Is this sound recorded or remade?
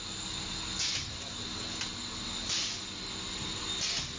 recorded